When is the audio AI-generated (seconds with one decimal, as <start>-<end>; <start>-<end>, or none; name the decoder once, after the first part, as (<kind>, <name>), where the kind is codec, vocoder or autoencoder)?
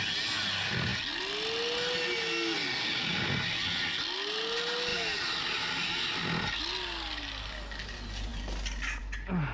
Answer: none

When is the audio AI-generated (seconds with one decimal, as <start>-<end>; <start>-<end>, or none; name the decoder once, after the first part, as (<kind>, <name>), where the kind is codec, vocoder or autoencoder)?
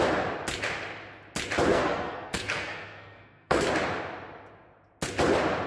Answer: 1.7-3.7 (codec, SNAC)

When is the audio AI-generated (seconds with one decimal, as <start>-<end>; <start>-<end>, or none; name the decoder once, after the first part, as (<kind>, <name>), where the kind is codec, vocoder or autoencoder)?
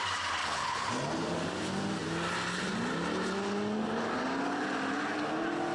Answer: 0.4-0.9 (codec, HILCodec)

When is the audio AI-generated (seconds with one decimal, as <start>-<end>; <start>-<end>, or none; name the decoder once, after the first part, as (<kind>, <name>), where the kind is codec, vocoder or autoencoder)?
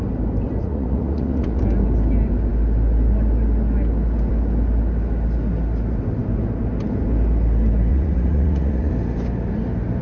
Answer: 0.6-1.6 (vocoder, Vocos); 7.9-8.9